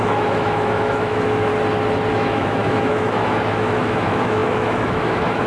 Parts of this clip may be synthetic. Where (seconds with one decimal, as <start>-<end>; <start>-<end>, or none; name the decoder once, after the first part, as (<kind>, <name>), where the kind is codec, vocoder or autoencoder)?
0.0-1.5 (autoencoder, DAC-VAE); 2.1-5.5